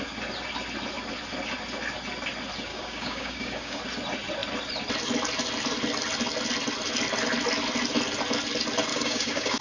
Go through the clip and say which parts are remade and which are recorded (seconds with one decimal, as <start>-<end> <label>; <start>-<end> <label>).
0.0-2.7 recorded; 2.7-3.8 remade; 3.8-8.9 recorded; 8.9-9.6 remade